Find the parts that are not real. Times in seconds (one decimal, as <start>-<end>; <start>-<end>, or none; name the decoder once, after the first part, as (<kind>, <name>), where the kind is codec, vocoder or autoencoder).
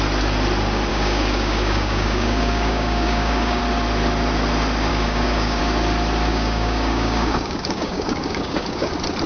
0.9-3.6 (codec, DAC); 4.9-5.6; 6.3-8.9